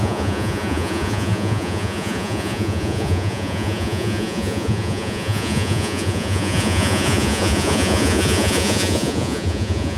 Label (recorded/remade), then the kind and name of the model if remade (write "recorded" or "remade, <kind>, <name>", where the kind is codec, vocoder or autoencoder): remade, vocoder, Vocos